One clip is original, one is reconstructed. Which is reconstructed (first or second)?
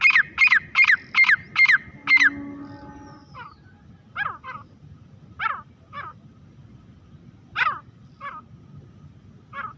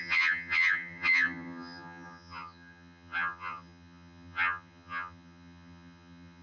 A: second